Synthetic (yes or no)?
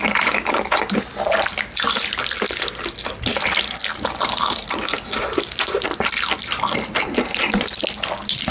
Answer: no